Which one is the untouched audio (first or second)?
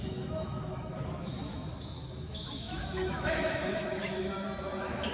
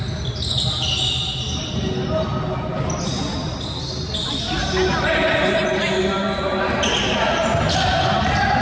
second